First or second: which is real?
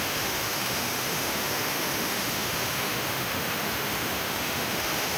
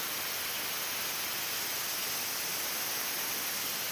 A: second